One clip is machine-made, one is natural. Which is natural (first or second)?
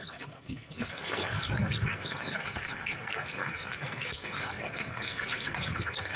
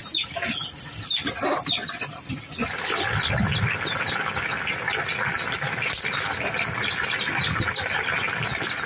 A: second